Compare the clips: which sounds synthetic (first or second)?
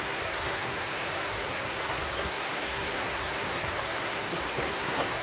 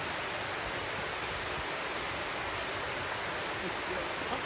first